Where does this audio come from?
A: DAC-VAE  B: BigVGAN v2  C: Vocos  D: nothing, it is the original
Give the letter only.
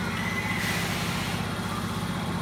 D